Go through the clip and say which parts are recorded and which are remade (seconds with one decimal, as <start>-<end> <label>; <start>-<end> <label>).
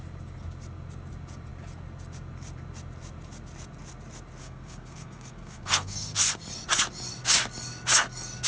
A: 0.0-4.4 recorded; 4.4-6.2 remade; 6.2-8.5 recorded